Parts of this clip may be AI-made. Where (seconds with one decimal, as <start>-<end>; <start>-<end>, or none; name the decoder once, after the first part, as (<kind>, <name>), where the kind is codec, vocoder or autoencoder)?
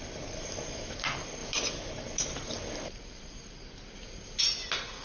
none